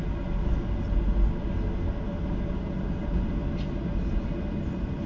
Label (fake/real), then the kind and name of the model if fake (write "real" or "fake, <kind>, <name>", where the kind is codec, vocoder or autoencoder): real